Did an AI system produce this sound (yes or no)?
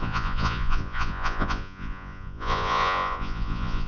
yes